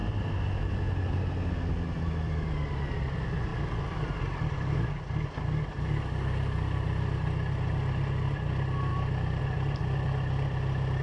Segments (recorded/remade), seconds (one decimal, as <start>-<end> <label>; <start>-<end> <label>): 0.0-8.9 recorded; 8.9-9.4 remade; 9.4-11.0 recorded